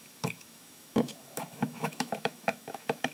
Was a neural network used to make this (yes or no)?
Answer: yes